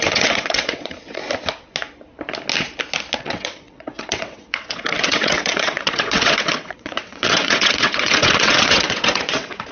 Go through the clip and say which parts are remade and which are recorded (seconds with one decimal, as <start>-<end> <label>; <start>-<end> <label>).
0.0-1.2 remade; 1.2-3.2 recorded; 3.2-9.7 remade

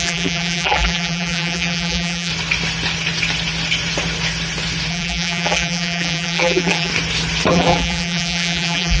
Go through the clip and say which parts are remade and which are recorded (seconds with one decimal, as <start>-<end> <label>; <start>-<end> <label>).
0.0-2.3 remade; 2.3-4.9 recorded; 4.9-6.9 remade; 6.9-7.5 recorded; 7.5-9.0 remade

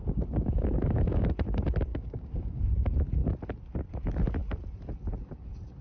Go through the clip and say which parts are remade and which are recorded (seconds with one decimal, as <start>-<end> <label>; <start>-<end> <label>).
0.0-1.3 remade; 1.3-1.9 recorded; 1.9-2.6 remade; 2.6-5.8 recorded

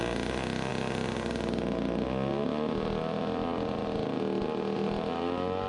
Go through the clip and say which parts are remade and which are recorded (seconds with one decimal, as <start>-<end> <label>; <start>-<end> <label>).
0.0-5.7 recorded

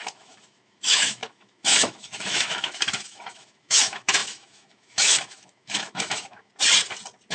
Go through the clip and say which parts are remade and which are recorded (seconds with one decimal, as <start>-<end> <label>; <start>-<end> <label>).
0.0-6.5 remade; 6.5-7.3 recorded

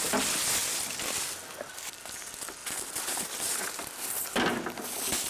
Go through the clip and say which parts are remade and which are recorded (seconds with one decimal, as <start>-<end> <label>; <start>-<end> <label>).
0.0-5.3 recorded

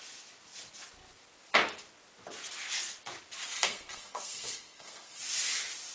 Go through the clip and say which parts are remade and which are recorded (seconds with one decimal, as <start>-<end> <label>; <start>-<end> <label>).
0.0-3.5 recorded; 3.5-5.2 remade; 5.2-5.9 recorded

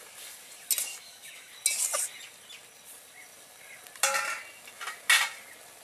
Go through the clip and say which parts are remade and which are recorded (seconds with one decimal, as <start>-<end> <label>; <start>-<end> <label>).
0.0-0.9 recorded; 0.9-1.5 remade; 1.5-5.8 recorded